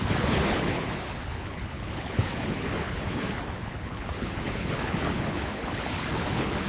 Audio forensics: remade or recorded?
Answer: remade